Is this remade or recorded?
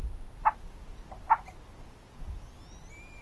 recorded